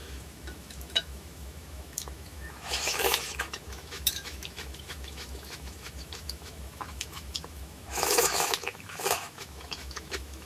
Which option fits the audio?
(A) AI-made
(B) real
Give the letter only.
A